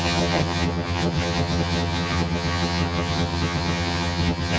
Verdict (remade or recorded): remade